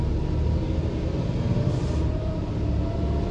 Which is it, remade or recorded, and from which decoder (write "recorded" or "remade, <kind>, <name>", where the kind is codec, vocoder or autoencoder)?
recorded